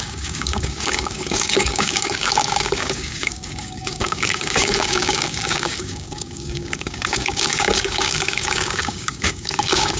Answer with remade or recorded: remade